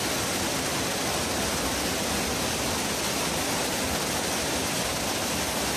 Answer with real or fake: real